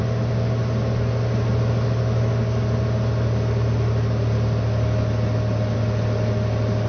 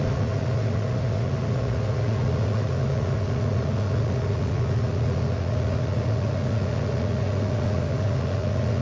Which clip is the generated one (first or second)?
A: second